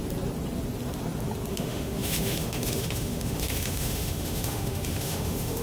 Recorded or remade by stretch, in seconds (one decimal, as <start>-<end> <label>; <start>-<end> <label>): 0.0-1.5 recorded; 1.5-5.6 remade